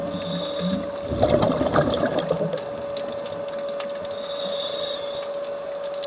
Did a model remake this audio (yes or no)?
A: no